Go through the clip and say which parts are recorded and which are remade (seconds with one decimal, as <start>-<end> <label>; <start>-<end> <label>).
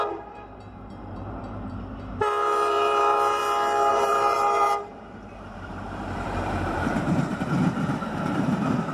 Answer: 0.0-3.4 remade; 3.4-3.9 recorded; 3.9-7.3 remade; 7.3-8.0 recorded; 8.0-8.9 remade